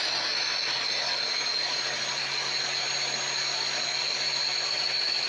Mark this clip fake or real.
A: real